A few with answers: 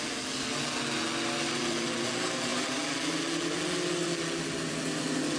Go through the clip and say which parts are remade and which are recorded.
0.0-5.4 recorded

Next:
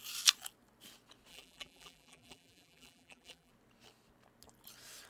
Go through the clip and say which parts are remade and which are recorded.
0.0-1.3 recorded; 1.3-3.5 remade; 3.5-5.1 recorded

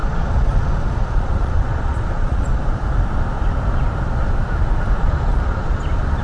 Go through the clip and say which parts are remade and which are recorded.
0.0-2.6 remade; 2.6-5.0 recorded; 5.0-5.8 remade; 5.8-6.2 recorded

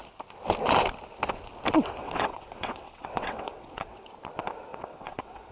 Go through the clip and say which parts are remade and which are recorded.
0.0-2.0 recorded; 2.0-4.1 remade; 4.1-4.7 recorded; 4.7-5.5 remade